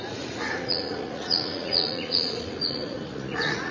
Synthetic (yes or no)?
yes